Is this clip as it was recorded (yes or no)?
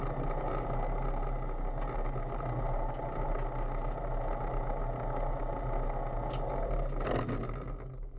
yes